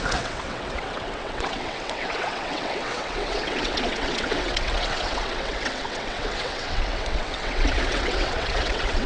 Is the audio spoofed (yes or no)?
yes